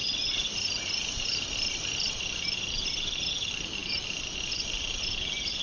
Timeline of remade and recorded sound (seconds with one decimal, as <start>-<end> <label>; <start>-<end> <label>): 0.0-3.3 remade; 3.3-5.6 recorded